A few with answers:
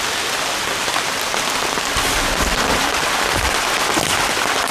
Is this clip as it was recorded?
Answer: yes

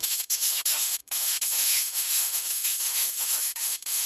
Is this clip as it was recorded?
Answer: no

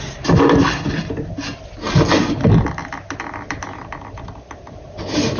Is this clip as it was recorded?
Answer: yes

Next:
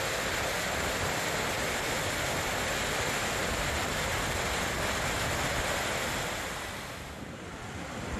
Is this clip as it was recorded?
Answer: yes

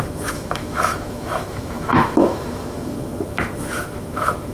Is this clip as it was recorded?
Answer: no